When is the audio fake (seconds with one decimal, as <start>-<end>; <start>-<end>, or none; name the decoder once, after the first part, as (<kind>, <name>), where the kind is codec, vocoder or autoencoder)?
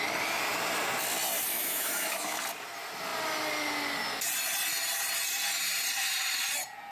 1.5-2.4 (autoencoder, DAC-VAE)